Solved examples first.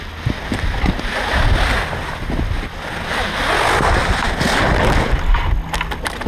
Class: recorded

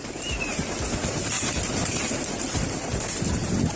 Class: recorded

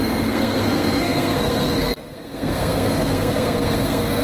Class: remade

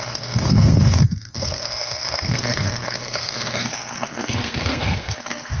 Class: remade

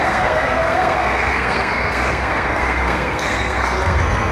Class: remade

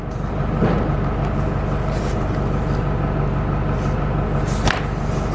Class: recorded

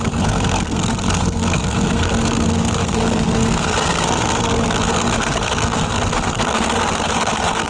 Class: remade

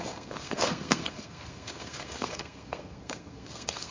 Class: remade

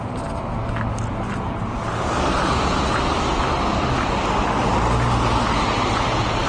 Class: recorded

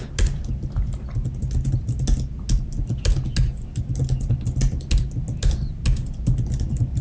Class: recorded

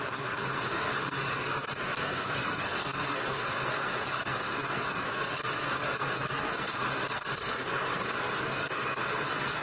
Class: remade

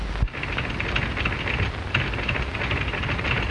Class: recorded